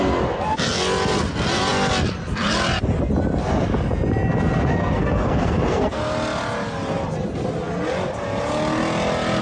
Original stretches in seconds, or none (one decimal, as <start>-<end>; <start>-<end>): 0.0-4.8; 6.0-9.4